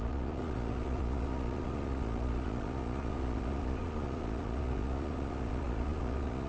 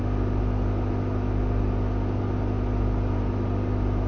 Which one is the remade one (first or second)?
first